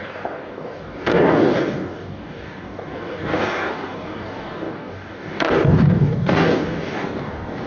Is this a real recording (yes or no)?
no